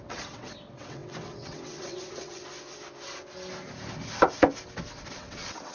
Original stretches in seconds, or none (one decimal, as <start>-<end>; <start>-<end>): 2.4-5.1